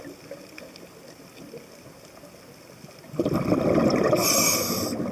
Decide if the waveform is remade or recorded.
recorded